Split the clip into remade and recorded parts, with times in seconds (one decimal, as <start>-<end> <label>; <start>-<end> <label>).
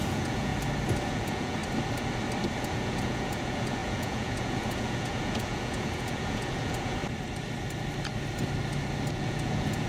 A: 0.0-0.5 remade; 0.5-1.1 recorded; 1.1-1.6 remade; 1.6-2.6 recorded; 2.6-7.0 remade; 7.0-9.1 recorded; 9.1-9.9 remade